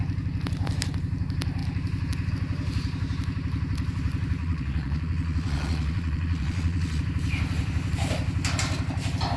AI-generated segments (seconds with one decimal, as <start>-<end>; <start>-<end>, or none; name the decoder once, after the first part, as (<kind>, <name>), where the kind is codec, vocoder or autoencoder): 4.4-7.0 (vocoder, Vocos)